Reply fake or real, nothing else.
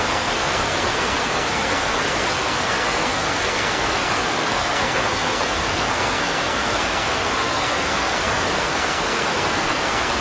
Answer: fake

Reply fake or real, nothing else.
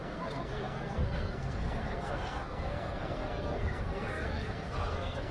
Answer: fake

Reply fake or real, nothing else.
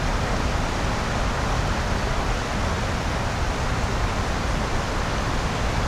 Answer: real